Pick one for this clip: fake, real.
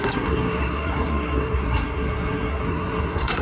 fake